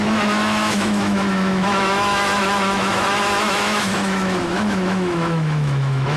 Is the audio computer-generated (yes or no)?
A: yes